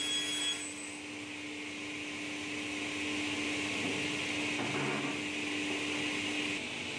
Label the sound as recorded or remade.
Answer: recorded